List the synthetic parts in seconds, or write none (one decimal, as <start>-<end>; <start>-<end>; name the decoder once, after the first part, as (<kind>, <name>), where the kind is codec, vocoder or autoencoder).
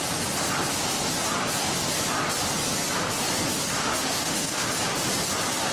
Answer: 3.8-4.7 (autoencoder, DAC-VAE)